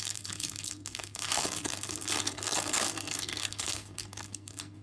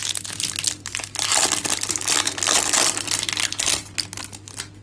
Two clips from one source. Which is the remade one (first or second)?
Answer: first